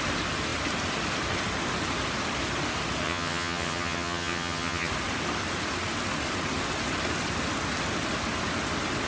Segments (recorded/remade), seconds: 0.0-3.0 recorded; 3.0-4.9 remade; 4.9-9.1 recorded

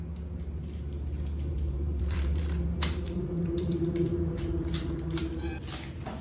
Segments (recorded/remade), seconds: 0.0-1.5 recorded; 1.5-5.2 remade; 5.2-6.2 recorded

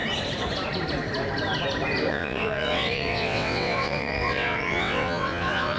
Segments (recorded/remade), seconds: 0.0-2.1 recorded; 2.1-5.8 remade

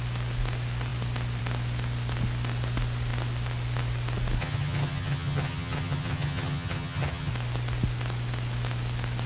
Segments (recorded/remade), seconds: 0.0-4.4 recorded; 4.4-7.3 remade; 7.3-9.3 recorded

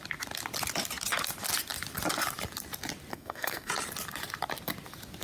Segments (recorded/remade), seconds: 0.0-3.1 recorded; 3.1-3.7 remade; 3.7-5.2 recorded